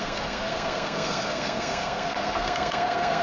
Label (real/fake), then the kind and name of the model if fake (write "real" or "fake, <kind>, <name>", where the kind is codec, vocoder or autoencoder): fake, codec, SNAC